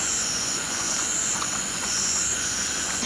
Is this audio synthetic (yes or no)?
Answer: yes